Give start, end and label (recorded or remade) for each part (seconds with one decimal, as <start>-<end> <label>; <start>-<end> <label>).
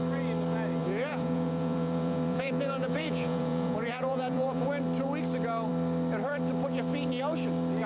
0.0-0.8 recorded; 0.8-4.7 remade; 4.7-7.9 recorded